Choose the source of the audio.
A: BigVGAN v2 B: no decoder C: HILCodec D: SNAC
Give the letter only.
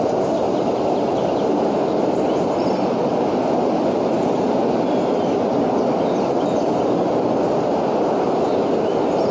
B